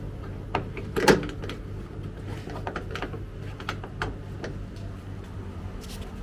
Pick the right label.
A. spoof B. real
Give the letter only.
B